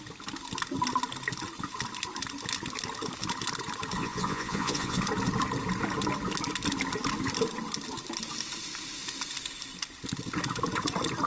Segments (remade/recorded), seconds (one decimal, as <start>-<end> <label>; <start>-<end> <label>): 0.0-4.0 recorded; 4.0-5.0 remade; 5.0-11.3 recorded